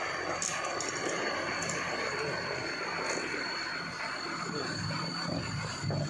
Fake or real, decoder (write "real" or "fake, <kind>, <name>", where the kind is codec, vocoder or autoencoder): real